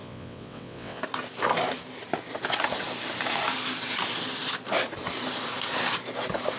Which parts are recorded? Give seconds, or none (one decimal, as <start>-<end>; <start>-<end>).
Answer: 1.0-6.6